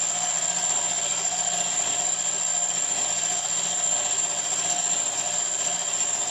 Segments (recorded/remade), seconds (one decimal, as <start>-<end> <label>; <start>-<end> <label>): 0.0-1.1 recorded; 1.1-1.9 remade; 1.9-6.3 recorded